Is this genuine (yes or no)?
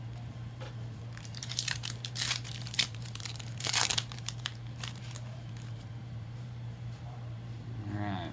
no